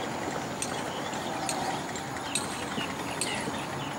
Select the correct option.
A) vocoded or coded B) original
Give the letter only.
B